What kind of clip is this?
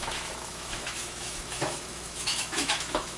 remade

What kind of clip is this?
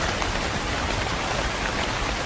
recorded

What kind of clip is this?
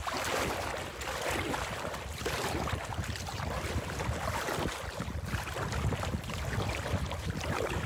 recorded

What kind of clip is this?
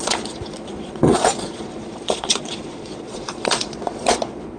remade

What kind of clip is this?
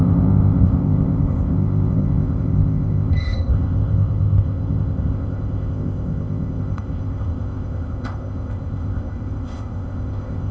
remade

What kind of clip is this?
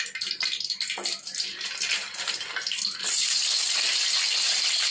recorded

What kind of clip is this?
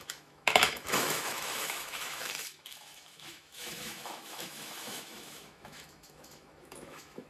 remade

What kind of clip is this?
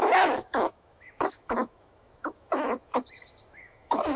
remade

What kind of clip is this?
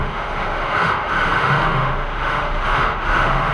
remade